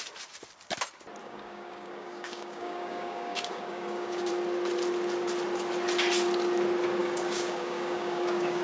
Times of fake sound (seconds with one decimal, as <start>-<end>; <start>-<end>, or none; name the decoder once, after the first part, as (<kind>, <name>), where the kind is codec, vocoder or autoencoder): 1.2-4.3 (codec, DAC); 7.0-8.6